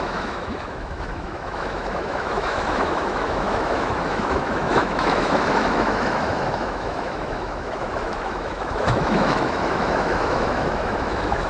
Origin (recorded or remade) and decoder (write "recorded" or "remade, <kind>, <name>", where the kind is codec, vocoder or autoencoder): remade, autoencoder, DAC-VAE